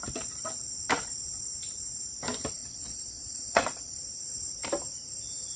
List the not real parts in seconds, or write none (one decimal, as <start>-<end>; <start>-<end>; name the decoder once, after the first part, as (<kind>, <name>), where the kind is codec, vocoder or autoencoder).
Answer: 2.6-3.9 (vocoder, Vocos)